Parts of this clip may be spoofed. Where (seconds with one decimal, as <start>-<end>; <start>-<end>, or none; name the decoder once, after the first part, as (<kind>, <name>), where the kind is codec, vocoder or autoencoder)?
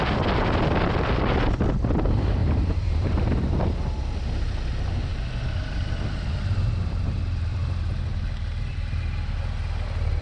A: 2.4-4.1 (vocoder, BigVGAN v2)